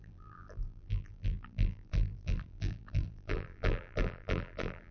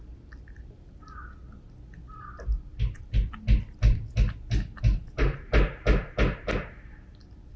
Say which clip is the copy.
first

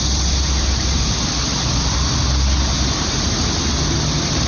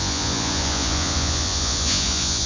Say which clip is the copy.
second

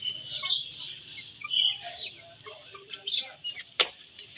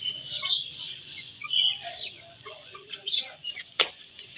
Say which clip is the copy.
second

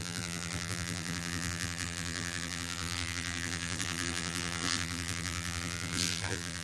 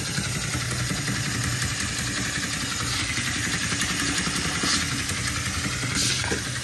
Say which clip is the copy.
first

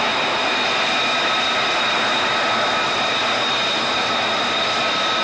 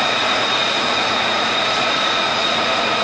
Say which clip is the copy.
second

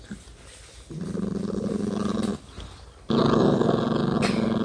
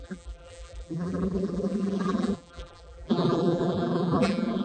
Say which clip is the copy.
second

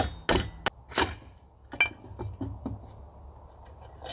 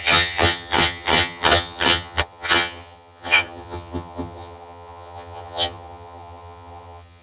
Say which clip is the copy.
second